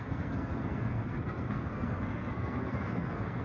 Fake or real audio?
fake